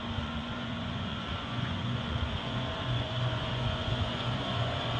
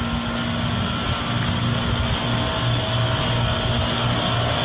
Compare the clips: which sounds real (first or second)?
second